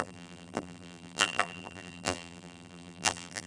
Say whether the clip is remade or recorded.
remade